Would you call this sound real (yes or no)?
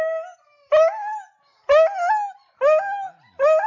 yes